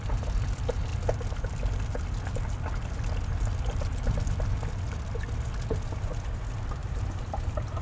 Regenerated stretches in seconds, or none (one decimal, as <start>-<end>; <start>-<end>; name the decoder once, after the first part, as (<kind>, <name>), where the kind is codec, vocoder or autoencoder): 6.8-7.8 (vocoder, BigVGAN v2)